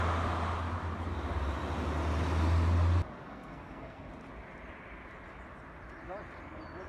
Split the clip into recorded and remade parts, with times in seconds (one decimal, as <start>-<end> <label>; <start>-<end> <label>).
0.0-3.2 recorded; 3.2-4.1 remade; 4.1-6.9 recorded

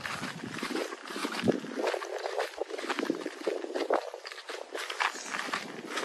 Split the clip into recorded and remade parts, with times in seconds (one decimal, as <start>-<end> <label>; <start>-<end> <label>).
0.0-6.0 recorded

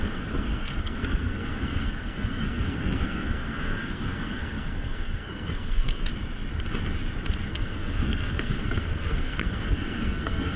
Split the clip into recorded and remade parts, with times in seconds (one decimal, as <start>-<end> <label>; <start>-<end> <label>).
0.0-6.1 remade; 6.1-7.5 recorded; 7.5-10.6 remade

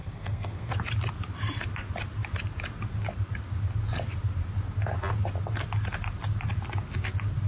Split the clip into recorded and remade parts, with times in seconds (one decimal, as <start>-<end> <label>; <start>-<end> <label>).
0.0-0.7 remade; 0.7-7.5 recorded

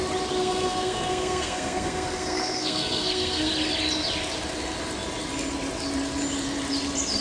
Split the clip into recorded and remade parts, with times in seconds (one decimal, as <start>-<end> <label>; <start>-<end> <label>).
0.0-0.4 recorded; 0.4-3.5 remade; 3.5-7.2 recorded

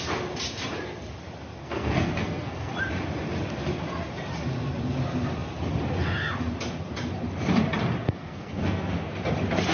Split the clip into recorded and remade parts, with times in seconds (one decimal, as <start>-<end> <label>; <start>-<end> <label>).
0.0-1.6 recorded; 1.6-2.7 remade; 2.7-8.0 recorded; 8.0-8.9 remade; 8.9-9.7 recorded

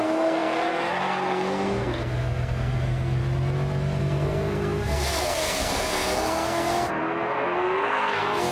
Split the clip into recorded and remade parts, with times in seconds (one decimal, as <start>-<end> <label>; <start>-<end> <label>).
0.0-3.2 remade; 3.2-4.0 recorded; 4.0-8.5 remade

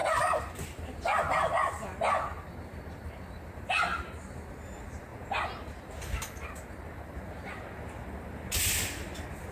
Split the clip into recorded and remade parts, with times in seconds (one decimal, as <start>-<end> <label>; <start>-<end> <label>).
0.0-9.5 recorded